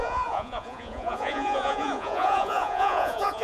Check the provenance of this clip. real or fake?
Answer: fake